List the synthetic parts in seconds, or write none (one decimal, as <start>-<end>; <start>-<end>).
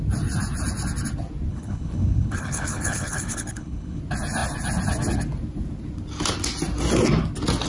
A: 1.5-4.0